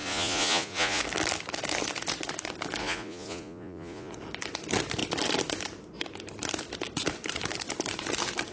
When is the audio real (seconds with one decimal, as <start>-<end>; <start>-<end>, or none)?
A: 1.0-2.8; 4.1-8.5